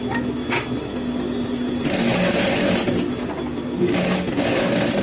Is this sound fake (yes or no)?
no